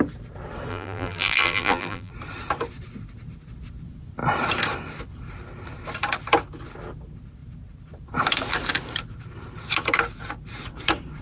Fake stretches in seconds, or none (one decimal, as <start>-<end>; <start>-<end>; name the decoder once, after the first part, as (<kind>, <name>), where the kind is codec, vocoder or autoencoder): 0.7-2.1 (vocoder, BigVGAN v2)